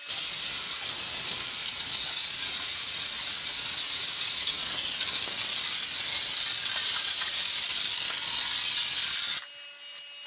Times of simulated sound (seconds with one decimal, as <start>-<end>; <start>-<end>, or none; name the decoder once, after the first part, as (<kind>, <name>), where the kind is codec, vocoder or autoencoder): 1.6-5.0 (vocoder, Vocos); 6.8-7.5